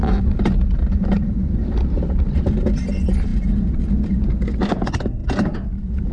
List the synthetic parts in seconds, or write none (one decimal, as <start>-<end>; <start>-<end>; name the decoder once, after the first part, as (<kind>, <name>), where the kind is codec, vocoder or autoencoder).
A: none